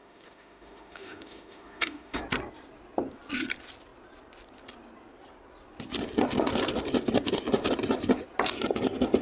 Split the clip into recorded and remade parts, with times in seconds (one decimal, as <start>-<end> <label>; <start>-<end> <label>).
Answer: 0.0-2.2 remade; 2.2-9.2 recorded